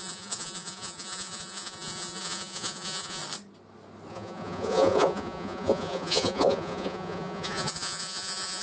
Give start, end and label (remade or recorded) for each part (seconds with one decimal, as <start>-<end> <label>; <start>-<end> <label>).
0.0-3.2 remade; 3.2-4.1 recorded; 4.1-8.6 remade